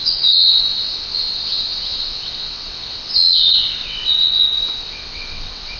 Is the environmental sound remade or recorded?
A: remade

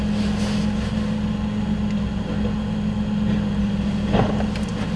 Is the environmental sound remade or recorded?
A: recorded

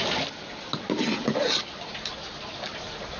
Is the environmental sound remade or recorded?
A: recorded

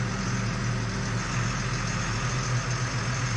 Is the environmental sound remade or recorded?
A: recorded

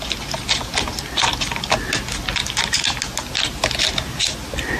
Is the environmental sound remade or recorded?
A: recorded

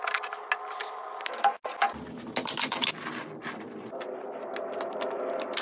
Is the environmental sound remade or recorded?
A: recorded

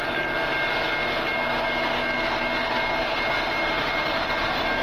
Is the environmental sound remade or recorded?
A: recorded